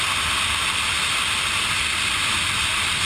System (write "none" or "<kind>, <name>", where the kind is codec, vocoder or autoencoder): none